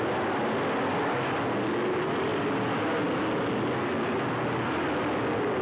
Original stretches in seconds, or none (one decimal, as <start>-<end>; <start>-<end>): 0.0-5.6